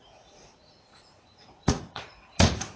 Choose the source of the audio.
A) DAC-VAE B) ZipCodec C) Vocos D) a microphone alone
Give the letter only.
C